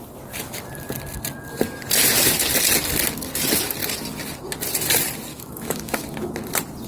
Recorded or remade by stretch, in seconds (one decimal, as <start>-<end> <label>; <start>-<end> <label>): 0.0-5.3 recorded; 5.3-6.4 remade; 6.4-6.9 recorded